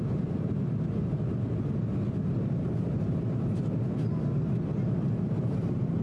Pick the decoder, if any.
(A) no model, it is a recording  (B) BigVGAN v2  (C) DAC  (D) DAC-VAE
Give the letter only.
A